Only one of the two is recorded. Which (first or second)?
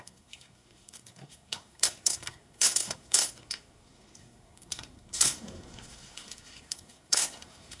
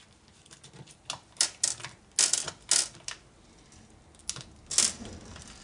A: second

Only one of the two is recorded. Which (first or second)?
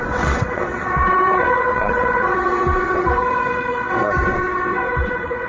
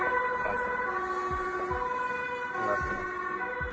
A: second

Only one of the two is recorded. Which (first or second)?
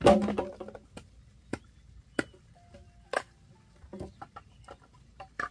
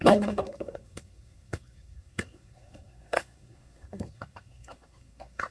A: first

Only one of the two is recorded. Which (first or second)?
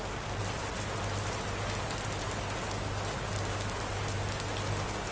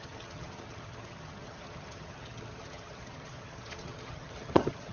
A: first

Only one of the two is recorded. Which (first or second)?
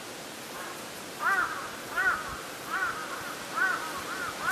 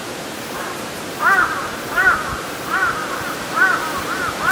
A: first